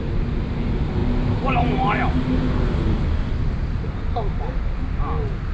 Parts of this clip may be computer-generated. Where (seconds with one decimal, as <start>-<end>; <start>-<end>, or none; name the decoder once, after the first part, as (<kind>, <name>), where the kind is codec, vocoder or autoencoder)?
none